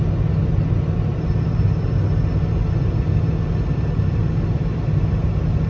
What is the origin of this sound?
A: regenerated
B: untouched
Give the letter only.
B